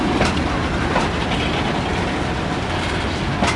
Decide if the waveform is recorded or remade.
recorded